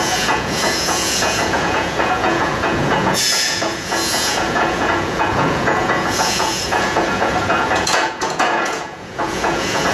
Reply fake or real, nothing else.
fake